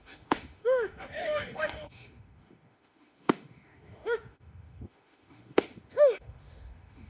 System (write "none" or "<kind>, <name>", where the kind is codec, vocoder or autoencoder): autoencoder, DAC-VAE